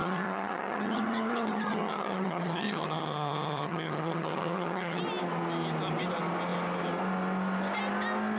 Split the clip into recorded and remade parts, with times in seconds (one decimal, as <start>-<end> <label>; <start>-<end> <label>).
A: 0.0-5.0 remade; 5.0-8.4 recorded